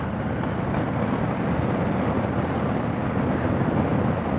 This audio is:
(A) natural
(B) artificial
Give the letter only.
A